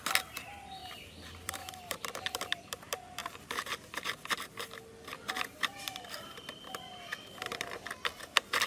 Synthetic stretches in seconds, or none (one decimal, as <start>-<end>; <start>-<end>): 0.8-2.8; 3.2-8.2